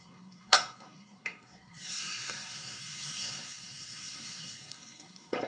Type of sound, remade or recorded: remade